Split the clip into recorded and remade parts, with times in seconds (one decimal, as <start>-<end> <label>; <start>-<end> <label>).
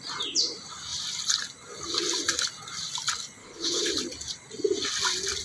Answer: 0.0-3.4 recorded; 3.4-3.9 remade; 3.9-5.4 recorded